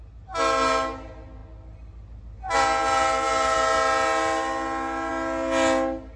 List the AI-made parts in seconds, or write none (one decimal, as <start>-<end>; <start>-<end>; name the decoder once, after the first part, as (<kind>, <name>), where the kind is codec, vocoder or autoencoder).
none